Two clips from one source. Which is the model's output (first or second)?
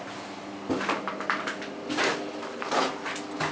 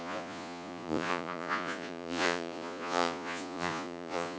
second